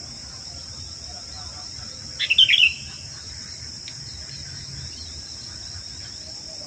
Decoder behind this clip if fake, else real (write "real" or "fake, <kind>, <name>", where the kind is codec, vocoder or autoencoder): real